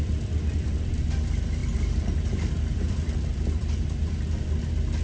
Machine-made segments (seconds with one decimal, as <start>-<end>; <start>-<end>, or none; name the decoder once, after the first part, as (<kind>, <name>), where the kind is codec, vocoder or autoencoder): 0.0-5.0 (vocoder, BigVGAN v2)